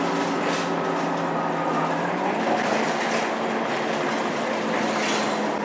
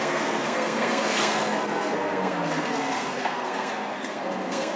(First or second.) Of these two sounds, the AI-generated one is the second